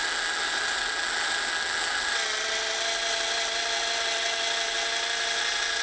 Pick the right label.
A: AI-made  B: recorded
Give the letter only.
B